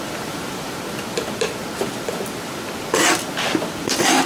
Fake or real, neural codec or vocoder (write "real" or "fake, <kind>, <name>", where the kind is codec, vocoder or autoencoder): fake, vocoder, BigVGAN v2